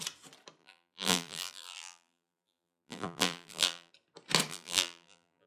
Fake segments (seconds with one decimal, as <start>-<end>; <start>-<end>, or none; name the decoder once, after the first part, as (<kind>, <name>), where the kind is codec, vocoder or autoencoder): 0.6-3.9 (vocoder, BigVGAN v2); 4.5-5.5